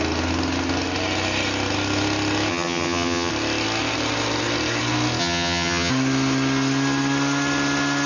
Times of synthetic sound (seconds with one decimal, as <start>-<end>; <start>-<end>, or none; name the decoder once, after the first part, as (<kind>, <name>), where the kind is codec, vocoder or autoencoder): 2.5-3.3 (vocoder, HiFi-GAN); 5.2-5.9